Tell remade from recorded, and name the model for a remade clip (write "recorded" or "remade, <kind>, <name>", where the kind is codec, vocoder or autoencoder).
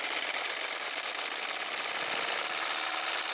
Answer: recorded